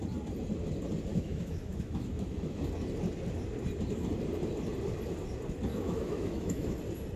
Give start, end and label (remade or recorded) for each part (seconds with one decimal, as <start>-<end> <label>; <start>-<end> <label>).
0.0-1.1 recorded; 1.1-2.6 remade; 2.6-5.7 recorded; 5.7-6.8 remade; 6.8-7.2 recorded